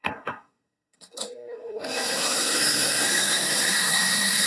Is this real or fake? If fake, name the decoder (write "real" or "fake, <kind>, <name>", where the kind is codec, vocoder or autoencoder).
fake, codec, SNAC